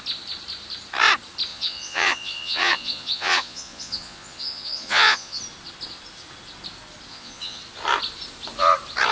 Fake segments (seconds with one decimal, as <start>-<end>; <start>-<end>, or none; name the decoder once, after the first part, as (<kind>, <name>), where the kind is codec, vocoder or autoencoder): 1.5-5.4 (vocoder, Vocos); 7.1-7.6